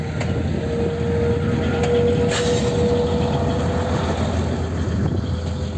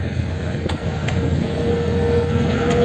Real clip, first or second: first